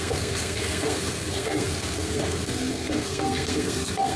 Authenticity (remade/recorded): remade